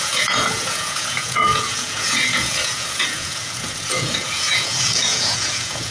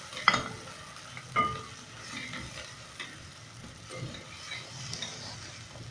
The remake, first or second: first